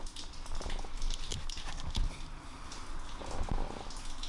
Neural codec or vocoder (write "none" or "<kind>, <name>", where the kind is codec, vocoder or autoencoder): none